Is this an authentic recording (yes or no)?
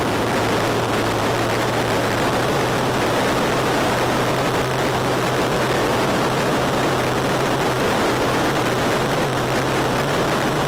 yes